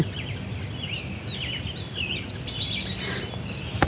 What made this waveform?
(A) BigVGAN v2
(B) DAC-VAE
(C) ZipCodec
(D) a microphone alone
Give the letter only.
D